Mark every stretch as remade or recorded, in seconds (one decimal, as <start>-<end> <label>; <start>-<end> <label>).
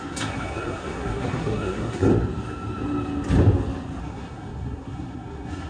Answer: 0.0-2.1 remade; 2.1-4.0 recorded; 4.0-5.7 remade